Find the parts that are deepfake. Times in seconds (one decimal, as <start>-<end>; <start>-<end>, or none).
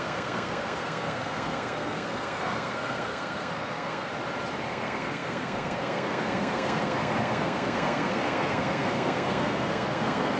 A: 0.0-4.1; 4.7-10.4